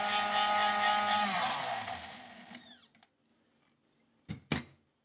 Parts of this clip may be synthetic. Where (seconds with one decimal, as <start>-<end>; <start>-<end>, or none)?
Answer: none